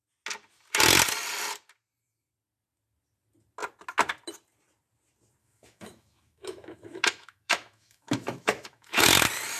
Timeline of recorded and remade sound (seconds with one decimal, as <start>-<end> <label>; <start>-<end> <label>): 0.0-5.4 recorded; 5.4-9.1 remade; 9.1-9.6 recorded

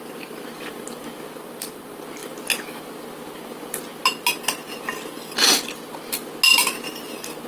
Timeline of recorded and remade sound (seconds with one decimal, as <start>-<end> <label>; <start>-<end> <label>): 0.0-7.5 recorded

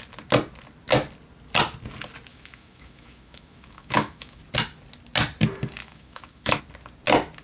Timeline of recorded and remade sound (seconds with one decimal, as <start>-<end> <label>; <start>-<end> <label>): 0.0-2.3 recorded; 2.3-4.4 remade; 4.4-5.8 recorded; 5.8-6.6 remade; 6.6-7.4 recorded